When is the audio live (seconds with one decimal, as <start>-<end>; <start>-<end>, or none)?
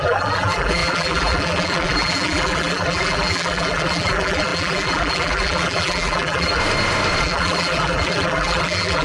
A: 6.6-7.2